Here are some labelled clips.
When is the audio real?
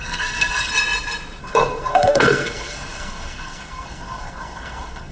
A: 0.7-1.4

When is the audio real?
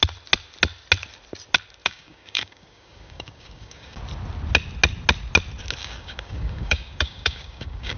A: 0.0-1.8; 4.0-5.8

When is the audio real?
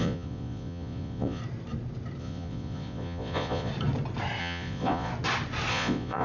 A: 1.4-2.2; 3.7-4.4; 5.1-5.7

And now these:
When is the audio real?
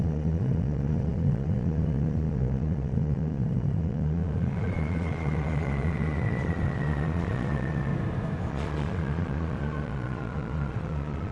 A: 7.9-8.5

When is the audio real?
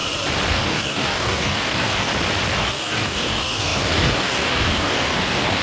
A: 0.0-0.5; 2.1-2.6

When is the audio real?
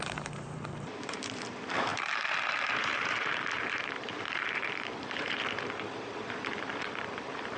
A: none